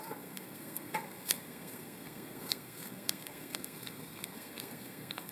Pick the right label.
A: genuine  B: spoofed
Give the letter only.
B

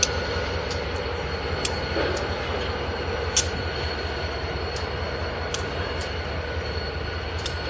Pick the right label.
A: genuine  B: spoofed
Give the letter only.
A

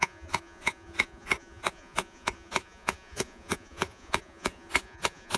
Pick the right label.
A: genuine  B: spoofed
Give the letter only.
B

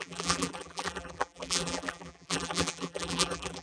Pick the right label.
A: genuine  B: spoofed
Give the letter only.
B